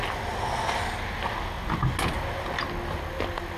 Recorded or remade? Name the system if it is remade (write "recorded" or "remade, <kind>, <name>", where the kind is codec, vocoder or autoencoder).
recorded